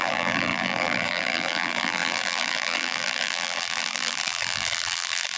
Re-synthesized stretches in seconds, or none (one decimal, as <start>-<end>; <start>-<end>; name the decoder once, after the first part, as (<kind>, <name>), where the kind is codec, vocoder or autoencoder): 0.0-5.4 (vocoder, BigVGAN v2)